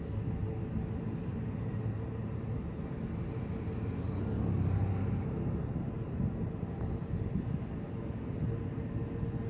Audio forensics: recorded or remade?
recorded